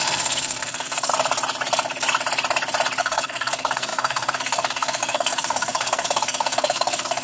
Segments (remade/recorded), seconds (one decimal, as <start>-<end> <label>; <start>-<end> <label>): 0.0-1.1 remade; 1.1-3.0 recorded; 3.0-7.2 remade